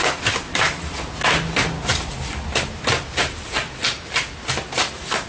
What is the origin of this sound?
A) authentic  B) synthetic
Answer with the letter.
A